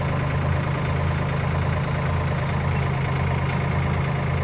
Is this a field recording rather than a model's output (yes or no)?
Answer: yes